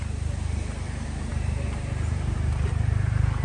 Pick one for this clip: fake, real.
fake